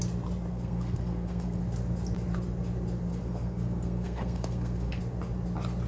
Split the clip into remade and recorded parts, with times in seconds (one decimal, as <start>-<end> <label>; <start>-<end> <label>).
0.0-0.5 recorded; 0.5-1.6 remade; 1.6-3.1 recorded; 3.1-5.0 remade; 5.0-5.9 recorded